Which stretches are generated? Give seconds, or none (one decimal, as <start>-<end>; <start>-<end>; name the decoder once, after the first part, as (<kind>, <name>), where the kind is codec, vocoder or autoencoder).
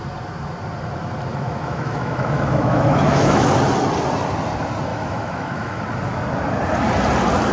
1.3-3.5 (autoencoder, DAC-VAE); 4.9-5.8